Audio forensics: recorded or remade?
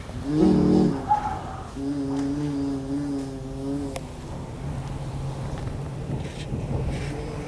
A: recorded